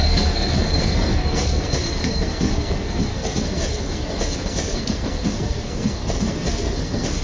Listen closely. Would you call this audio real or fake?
fake